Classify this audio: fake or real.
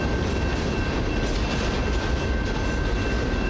real